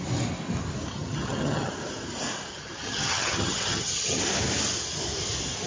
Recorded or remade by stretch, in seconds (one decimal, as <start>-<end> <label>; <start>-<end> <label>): 0.0-0.9 recorded; 0.9-1.7 remade; 1.7-2.5 recorded; 2.5-4.2 remade; 4.2-5.7 recorded